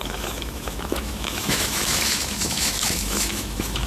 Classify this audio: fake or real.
fake